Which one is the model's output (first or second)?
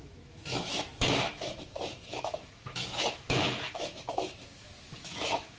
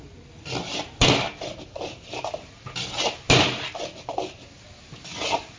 first